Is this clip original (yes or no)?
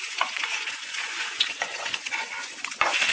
no